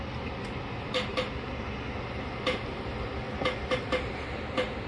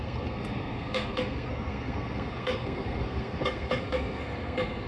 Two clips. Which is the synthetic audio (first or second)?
second